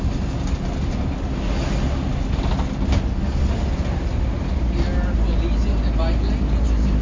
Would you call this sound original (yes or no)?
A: yes